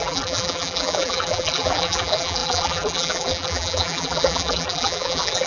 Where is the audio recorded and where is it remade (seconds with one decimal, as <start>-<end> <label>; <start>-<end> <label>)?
0.0-5.5 remade